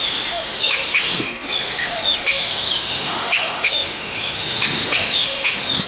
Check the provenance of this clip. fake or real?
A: fake